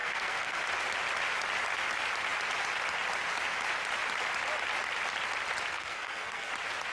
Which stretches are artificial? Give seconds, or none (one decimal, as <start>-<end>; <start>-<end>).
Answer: 0.0-0.6; 5.7-6.5